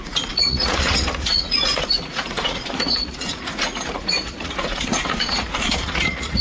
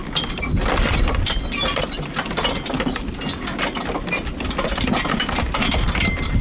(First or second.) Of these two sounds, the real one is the second